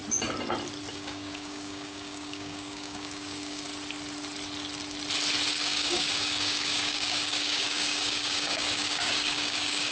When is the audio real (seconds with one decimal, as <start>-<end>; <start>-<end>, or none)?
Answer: 0.0-0.9; 3.7-5.5